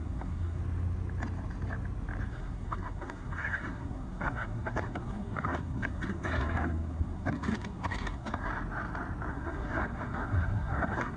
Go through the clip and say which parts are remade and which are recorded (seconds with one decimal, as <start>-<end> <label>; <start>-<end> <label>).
0.0-0.6 remade; 0.6-2.3 recorded; 2.3-8.5 remade; 8.5-9.3 recorded; 9.3-11.2 remade